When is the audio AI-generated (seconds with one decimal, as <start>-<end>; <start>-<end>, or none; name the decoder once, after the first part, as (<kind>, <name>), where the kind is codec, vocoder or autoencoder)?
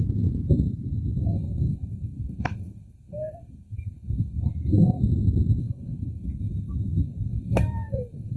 1.2-5.0 (codec, SNAC); 5.6-8.4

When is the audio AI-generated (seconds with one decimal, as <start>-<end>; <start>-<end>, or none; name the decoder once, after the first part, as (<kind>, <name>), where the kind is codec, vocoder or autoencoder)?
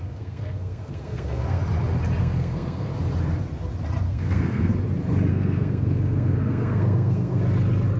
0.0-1.6 (codec, SNAC); 2.2-2.9; 4.0-4.7; 5.3-7.4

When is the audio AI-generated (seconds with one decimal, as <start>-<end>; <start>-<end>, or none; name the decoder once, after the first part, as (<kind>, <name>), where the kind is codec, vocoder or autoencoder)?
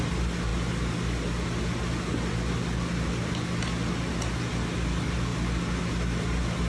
none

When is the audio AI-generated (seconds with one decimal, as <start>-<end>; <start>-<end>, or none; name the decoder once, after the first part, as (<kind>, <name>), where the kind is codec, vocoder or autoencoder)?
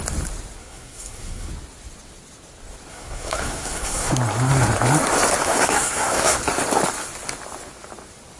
0.6-1.5 (codec, SNAC); 2.9-4.1; 5.4-6.4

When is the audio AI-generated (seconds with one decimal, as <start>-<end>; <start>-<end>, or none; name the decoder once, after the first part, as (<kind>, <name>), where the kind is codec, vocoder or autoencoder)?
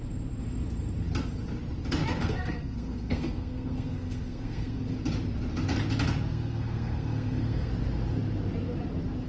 2.2-4.8 (codec, SNAC); 6.3-7.7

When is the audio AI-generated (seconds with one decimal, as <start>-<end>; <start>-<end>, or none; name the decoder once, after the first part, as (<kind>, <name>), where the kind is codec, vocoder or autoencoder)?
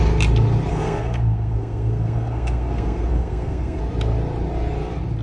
0.7-3.8 (codec, SNAC)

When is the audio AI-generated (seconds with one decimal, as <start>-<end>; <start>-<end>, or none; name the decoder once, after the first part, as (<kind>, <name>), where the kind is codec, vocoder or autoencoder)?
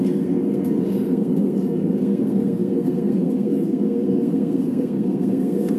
0.0-5.8 (codec, SNAC)